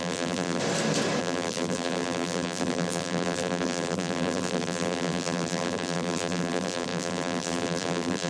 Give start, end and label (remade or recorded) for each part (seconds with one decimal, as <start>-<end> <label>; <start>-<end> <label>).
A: 0.0-0.6 remade; 0.6-1.2 recorded; 1.2-8.3 remade